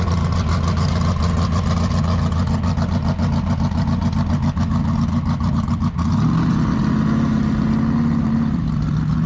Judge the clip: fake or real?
real